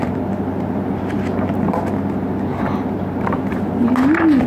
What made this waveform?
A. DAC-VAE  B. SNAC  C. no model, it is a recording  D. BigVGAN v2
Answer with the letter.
C